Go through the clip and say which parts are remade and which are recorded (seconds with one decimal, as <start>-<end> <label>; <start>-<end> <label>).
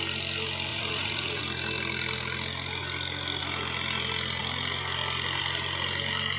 0.0-0.7 recorded; 0.7-1.4 remade; 1.4-6.4 recorded